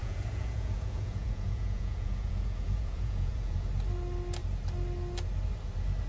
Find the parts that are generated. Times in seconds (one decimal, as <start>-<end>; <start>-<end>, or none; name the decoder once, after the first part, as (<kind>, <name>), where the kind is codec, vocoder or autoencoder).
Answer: 0.0-3.7 (vocoder, Vocos)